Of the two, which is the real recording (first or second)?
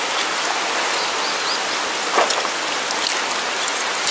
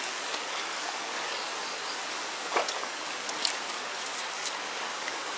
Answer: first